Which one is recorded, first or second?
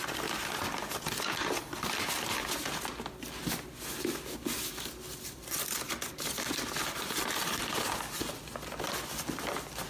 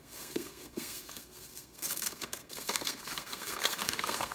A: first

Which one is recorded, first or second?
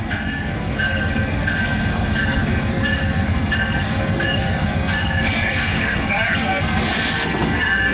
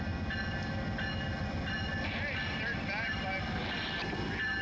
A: second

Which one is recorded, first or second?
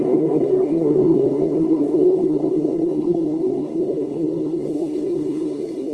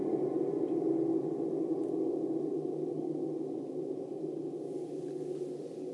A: second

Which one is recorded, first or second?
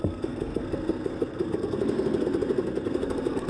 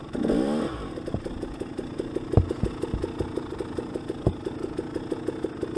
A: second